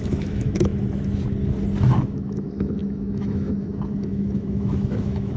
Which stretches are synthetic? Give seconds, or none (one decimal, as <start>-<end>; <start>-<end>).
0.0-0.7; 2.0-5.4